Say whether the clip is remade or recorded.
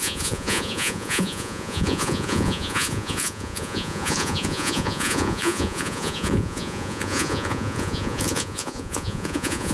remade